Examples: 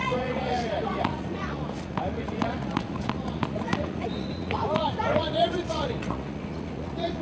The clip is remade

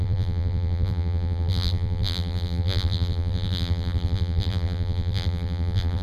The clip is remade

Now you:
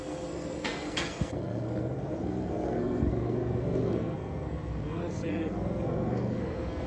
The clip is remade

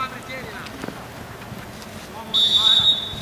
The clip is recorded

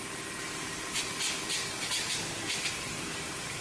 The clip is recorded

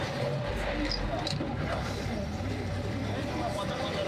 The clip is remade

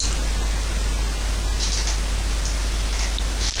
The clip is recorded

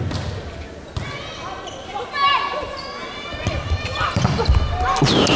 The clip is recorded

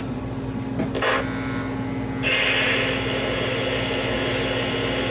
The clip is recorded